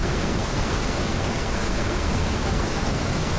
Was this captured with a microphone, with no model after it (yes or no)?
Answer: no